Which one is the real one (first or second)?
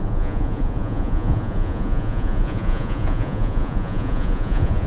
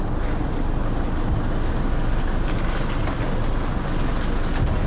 second